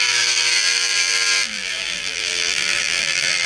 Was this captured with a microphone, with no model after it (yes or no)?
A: no